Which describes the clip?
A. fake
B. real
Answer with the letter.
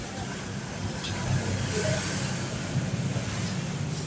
B